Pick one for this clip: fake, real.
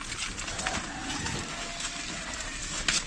real